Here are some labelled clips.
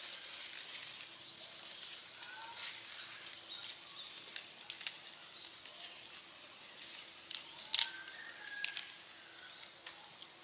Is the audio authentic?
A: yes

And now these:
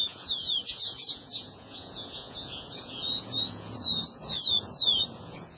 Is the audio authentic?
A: no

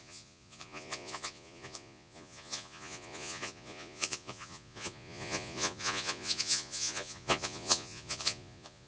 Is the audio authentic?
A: no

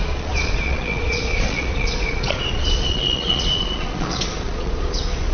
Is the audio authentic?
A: no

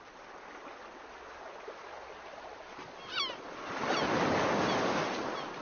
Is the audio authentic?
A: yes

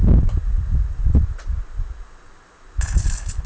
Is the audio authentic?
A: yes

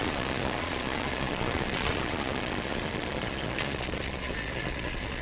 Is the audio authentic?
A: no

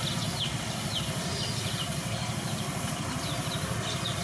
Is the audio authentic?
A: yes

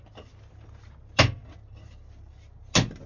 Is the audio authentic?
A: yes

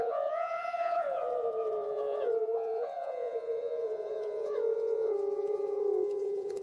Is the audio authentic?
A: no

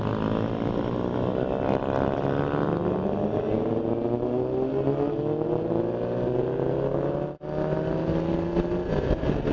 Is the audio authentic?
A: yes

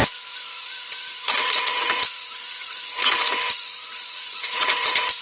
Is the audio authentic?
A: no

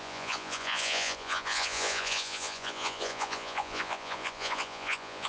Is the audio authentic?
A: no